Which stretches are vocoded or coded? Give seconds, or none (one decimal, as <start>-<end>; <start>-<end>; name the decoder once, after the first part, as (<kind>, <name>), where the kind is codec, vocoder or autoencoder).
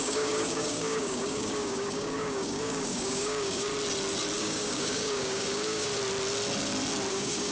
0.0-3.7 (codec, DAC); 4.4-5.9; 7.1-7.5